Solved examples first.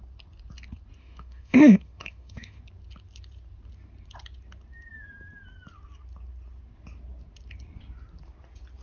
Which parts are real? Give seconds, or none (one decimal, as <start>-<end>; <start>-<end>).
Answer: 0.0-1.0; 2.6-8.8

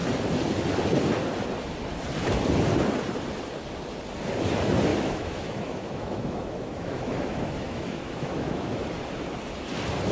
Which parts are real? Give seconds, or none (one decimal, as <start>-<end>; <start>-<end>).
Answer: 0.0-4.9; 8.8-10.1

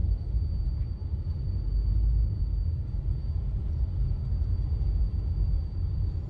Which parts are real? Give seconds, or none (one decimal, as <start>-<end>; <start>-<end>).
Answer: 0.0-6.3

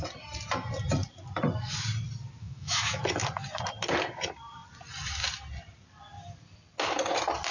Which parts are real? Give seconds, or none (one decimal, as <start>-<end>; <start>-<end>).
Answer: 0.0-2.4; 3.0-7.5